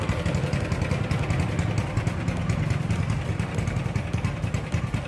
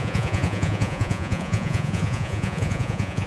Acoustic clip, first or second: first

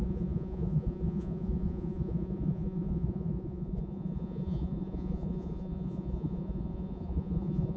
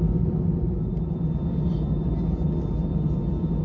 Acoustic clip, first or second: second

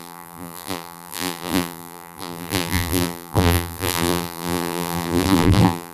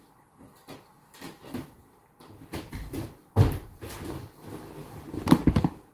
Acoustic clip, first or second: second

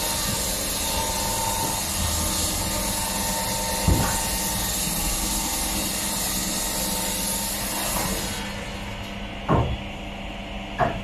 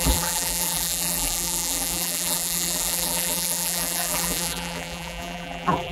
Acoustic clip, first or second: first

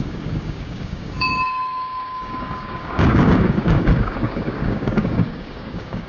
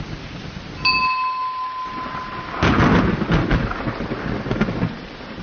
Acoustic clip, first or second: second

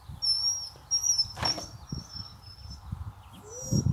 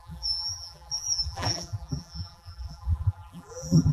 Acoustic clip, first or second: first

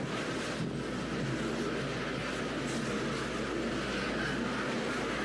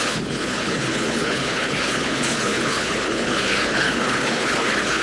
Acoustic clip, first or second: first